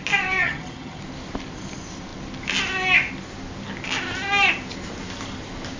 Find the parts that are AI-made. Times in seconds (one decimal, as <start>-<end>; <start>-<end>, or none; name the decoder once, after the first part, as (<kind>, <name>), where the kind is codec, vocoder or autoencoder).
0.4-1.0 (vocoder, HiFi-GAN)